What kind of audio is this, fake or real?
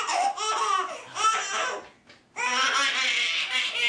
real